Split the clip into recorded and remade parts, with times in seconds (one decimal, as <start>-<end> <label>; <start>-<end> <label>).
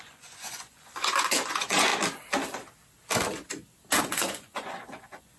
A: 0.0-1.9 remade; 1.9-4.0 recorded; 4.0-5.4 remade